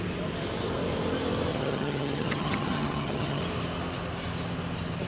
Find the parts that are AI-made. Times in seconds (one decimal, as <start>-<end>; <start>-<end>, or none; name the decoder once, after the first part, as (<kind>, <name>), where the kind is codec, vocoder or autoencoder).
1.5-3.4 (vocoder, HiFi-GAN)